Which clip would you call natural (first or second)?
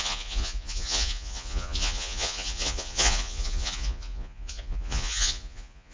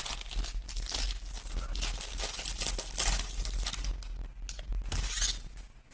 second